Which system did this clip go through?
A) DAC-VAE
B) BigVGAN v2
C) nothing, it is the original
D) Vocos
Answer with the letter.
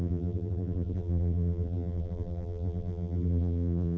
B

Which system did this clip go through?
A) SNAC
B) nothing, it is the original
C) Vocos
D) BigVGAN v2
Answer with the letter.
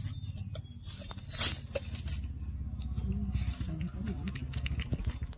B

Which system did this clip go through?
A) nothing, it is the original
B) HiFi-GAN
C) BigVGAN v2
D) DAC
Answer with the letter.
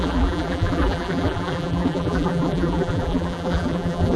C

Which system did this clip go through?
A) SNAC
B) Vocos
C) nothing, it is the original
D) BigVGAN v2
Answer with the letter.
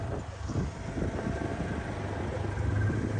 C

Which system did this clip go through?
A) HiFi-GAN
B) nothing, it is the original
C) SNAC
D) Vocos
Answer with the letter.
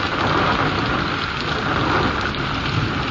B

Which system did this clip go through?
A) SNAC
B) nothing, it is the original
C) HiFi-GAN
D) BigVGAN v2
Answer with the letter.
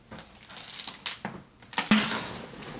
B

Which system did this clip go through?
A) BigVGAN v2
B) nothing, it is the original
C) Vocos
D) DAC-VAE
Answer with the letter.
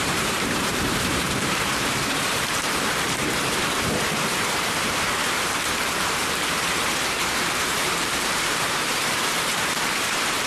A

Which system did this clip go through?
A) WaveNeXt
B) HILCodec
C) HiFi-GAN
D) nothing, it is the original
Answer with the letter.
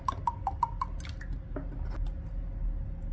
D